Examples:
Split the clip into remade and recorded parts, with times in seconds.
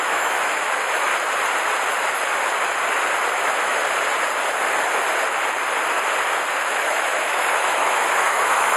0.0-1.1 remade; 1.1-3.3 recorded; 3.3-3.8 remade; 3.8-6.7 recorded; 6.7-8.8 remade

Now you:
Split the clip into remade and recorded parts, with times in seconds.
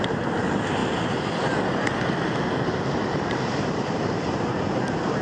0.0-0.8 remade; 0.8-2.6 recorded; 2.6-5.2 remade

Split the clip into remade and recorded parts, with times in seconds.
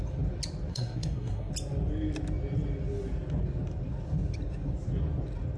0.0-0.7 recorded; 0.7-1.5 remade; 1.5-5.6 recorded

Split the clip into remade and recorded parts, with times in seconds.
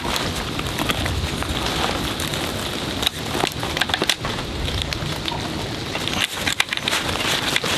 0.0-7.8 recorded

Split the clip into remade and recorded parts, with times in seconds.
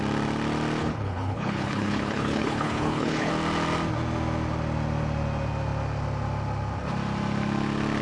0.0-0.8 recorded; 0.8-3.3 remade; 3.3-8.0 recorded